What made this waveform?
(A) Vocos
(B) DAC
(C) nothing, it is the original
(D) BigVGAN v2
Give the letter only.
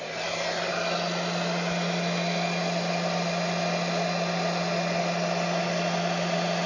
C